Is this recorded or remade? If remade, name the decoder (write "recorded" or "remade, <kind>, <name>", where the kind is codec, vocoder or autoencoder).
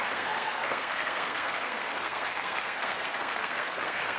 remade, codec, SNAC